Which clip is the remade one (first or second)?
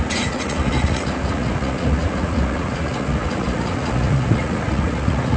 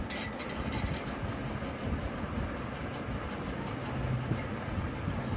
first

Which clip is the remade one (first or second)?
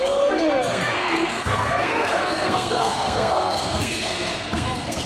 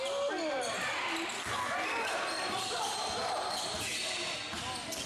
first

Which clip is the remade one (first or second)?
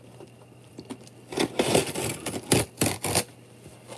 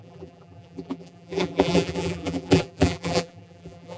second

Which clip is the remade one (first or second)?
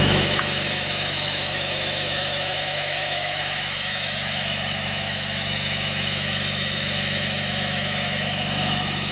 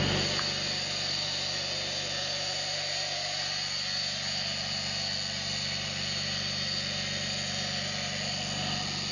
first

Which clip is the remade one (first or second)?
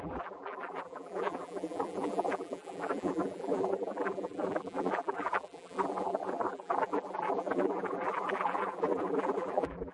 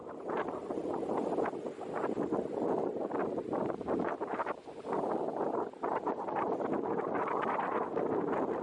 first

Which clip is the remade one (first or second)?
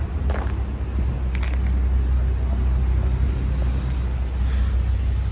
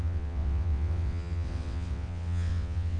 second